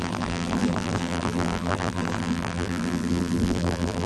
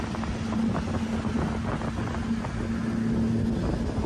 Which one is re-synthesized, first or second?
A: first